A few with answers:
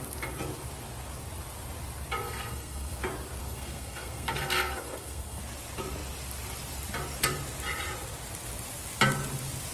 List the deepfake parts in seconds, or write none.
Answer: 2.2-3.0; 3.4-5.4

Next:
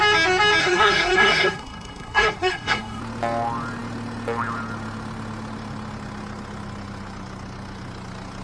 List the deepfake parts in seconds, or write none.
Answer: 0.6-3.0

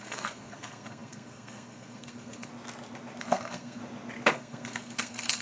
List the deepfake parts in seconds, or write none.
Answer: 0.0-2.5; 3.2-3.8; 4.3-5.4